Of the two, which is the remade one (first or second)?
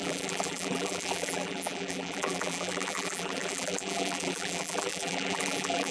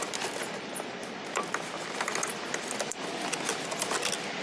first